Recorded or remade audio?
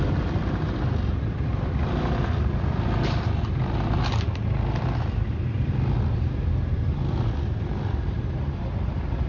recorded